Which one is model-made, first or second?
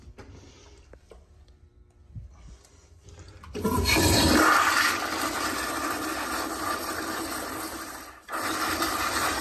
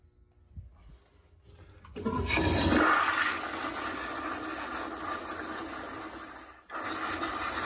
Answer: first